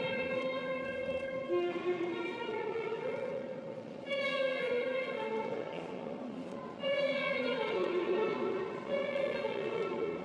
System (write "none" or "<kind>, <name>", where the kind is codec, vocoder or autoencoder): vocoder, Vocos